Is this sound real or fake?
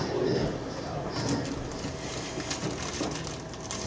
real